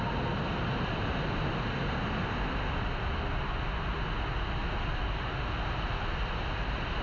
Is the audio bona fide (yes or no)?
yes